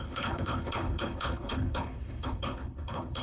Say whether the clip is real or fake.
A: fake